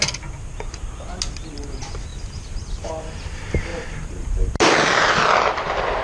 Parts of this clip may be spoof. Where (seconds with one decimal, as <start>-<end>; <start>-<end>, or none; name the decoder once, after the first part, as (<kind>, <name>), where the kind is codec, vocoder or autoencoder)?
none